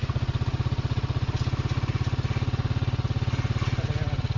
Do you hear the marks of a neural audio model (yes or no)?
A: no